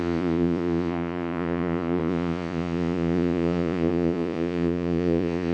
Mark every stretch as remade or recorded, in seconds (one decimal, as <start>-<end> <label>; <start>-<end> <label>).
0.0-5.5 remade